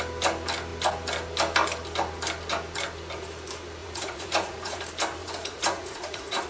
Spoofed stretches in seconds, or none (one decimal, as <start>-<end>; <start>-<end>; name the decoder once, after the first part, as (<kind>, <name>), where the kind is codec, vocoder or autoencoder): 3.8-4.8 (vocoder, Vocos); 5.2-6.5

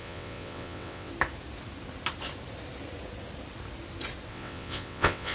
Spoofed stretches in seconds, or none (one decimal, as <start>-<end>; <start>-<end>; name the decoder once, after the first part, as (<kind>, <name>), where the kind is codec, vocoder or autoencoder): 0.0-1.1 (vocoder, WaveNeXt); 4.3-5.3

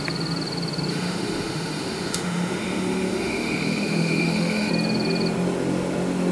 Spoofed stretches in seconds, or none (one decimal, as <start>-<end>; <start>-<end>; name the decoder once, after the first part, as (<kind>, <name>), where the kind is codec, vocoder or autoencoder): 0.9-4.7 (autoencoder, DAC-VAE)